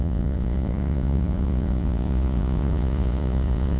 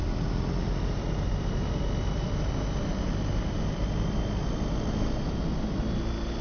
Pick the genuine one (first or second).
second